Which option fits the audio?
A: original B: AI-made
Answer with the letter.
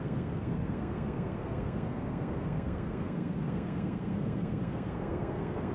B